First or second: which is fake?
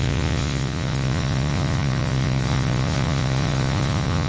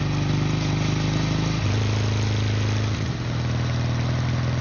first